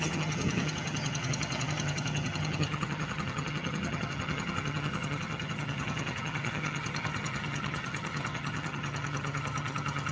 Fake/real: fake